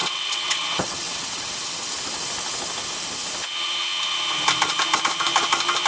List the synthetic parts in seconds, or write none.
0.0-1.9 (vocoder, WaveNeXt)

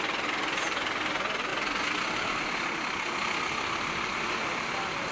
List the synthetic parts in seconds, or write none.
none

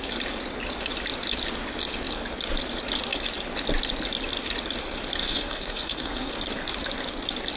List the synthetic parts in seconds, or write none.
5.2-6.3 (codec, SNAC)

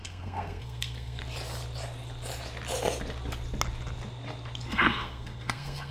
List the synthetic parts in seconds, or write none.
0.0-1.2 (codec, SNAC); 4.7-5.9

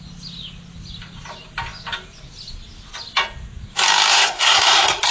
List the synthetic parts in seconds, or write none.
4.1-5.1 (codec, SNAC)